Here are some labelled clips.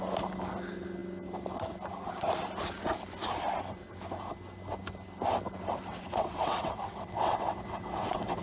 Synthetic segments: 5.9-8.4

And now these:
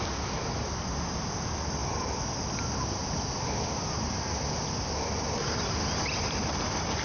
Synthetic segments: none

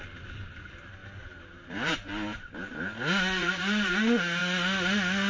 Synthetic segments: 1.0-2.8; 3.4-3.9

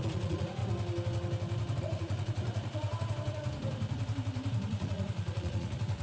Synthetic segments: 0.0-0.6; 1.8-2.9; 4.7-6.0